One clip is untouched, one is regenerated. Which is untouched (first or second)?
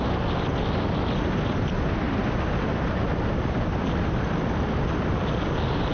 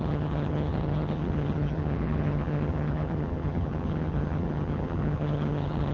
first